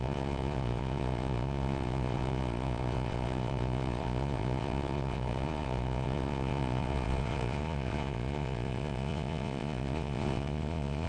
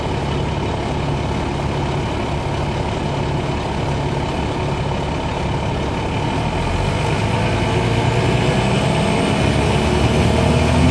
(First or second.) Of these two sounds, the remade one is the first